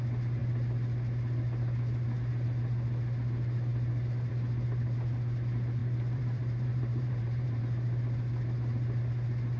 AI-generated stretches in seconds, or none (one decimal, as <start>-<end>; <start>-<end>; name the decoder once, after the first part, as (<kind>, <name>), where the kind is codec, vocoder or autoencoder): 5.8-7.6 (vocoder, BigVGAN v2)